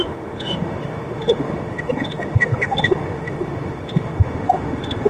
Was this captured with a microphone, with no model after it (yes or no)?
no